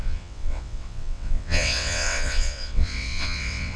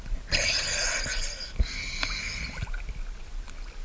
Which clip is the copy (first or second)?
first